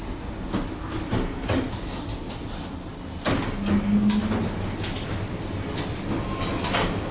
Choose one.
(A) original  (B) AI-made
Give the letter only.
A